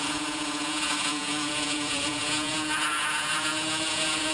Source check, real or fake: fake